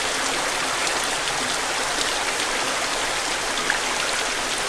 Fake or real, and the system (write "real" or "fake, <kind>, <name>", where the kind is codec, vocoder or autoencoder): real